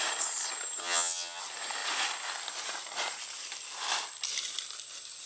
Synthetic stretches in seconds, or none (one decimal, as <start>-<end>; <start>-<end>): 0.8-1.4